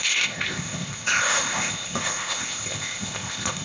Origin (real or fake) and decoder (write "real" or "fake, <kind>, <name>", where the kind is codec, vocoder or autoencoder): fake, codec, ZipCodec